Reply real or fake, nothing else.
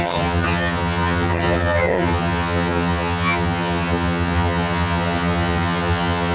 fake